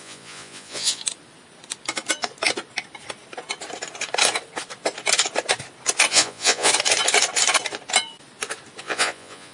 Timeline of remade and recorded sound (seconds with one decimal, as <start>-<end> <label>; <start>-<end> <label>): 0.0-1.0 remade; 1.0-6.1 recorded; 6.1-6.7 remade; 6.7-8.8 recorded; 8.8-9.5 remade